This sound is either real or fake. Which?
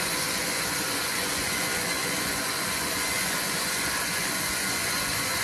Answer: fake